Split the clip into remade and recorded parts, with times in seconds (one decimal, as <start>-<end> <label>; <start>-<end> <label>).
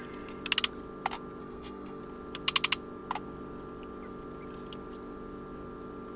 0.0-1.4 recorded; 1.4-2.0 remade; 2.0-6.2 recorded